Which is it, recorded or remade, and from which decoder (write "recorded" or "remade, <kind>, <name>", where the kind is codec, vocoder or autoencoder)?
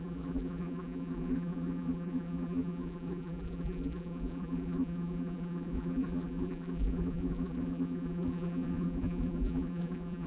remade, vocoder, BigVGAN v2